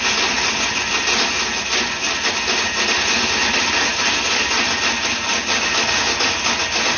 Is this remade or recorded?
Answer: recorded